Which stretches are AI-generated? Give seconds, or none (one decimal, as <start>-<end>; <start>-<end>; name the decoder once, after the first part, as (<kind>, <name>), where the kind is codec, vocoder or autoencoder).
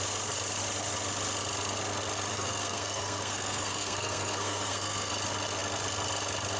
2.3-5.1 (codec, SNAC)